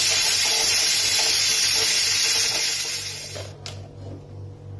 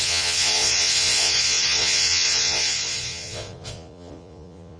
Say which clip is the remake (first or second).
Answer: second